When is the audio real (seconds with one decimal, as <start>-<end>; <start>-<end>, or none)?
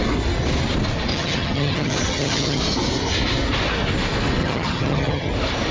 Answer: 0.0-1.1; 2.6-4.4; 5.3-5.7